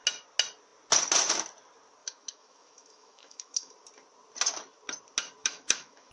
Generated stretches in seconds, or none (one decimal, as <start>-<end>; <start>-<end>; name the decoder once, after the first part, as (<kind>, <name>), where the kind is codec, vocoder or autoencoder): 2.0-3.7 (autoencoder, DAC-VAE); 5.4-6.1